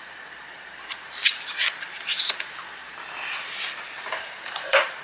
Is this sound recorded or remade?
remade